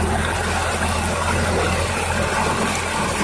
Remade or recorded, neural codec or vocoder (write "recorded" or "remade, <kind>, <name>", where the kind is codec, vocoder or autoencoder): recorded